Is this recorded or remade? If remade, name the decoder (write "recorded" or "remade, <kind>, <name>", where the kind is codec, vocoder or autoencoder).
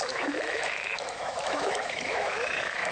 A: remade, autoencoder, DAC-VAE